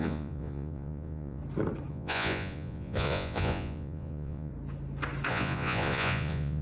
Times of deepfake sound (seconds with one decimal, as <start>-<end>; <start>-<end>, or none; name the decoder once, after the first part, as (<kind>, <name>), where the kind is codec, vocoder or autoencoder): 0.0-1.4 (vocoder, Vocos); 1.9-4.5; 5.3-6.6